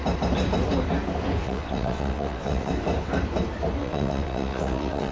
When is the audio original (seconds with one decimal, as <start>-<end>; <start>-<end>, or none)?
0.0-1.4; 2.7-3.8